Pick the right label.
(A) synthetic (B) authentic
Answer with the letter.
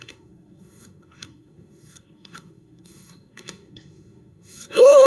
A